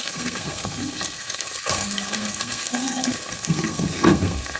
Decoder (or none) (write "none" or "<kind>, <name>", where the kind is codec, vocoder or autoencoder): codec, SNAC